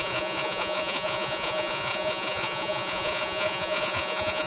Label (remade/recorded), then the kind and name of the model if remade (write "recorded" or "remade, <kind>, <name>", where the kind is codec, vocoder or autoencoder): remade, vocoder, Vocos